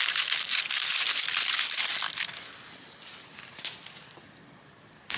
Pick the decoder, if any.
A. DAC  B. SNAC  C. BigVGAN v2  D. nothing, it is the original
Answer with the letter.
D